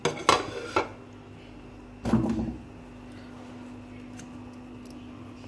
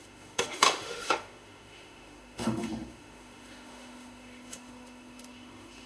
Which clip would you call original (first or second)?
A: first